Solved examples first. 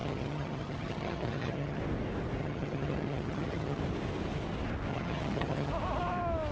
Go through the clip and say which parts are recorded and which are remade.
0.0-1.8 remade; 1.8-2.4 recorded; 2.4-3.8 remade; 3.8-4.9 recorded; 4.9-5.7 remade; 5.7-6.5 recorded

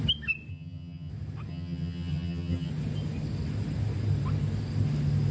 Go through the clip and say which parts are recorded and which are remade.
0.0-0.5 recorded; 0.5-1.1 remade; 1.1-1.5 recorded; 1.5-2.7 remade; 2.7-5.3 recorded

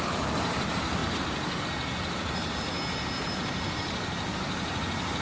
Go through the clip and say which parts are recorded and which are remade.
0.0-5.2 recorded

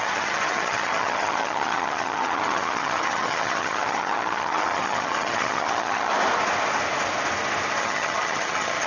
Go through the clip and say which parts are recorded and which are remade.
0.0-6.1 remade; 6.1-7.8 recorded; 7.8-8.9 remade

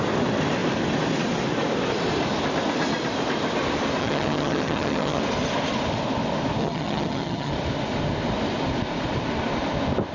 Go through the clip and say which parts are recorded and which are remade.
0.0-4.0 recorded; 4.0-5.2 remade; 5.2-6.6 recorded; 6.6-7.5 remade; 7.5-10.1 recorded

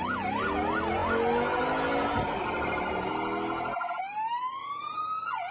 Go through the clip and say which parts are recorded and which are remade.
0.0-5.5 recorded

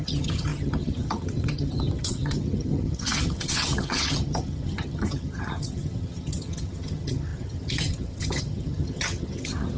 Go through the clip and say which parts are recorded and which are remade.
0.0-9.8 remade